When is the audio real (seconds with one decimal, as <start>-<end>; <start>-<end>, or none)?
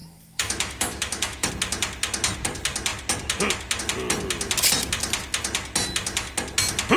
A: 1.5-7.0